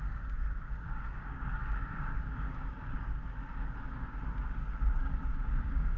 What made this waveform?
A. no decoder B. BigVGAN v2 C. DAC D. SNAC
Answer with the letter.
C